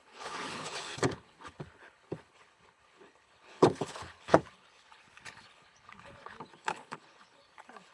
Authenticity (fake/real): fake